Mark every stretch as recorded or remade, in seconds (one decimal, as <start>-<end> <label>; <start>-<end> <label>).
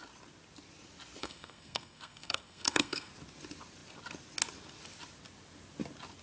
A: 0.0-1.2 recorded; 1.2-3.1 remade; 3.1-6.2 recorded